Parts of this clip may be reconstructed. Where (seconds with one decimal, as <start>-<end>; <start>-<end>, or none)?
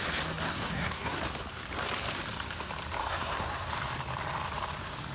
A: 0.5-1.2; 3.0-3.7